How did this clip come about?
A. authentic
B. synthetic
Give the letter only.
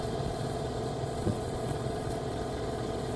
B